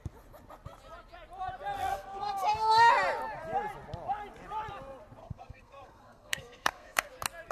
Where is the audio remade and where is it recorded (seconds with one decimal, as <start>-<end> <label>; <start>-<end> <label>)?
0.0-1.9 recorded; 1.9-2.9 remade; 2.9-5.2 recorded; 5.2-7.1 remade; 7.1-7.5 recorded